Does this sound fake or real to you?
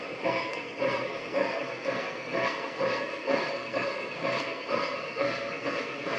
fake